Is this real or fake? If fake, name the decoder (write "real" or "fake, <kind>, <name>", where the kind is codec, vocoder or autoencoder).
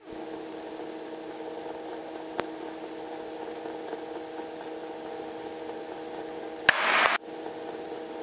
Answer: real